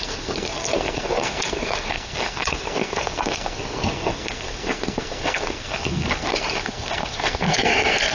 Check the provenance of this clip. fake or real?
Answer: fake